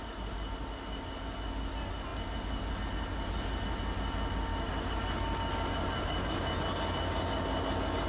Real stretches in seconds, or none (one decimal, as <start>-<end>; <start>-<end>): 0.0-4.5; 5.5-8.1